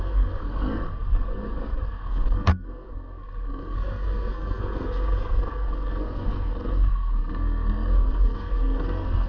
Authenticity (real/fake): fake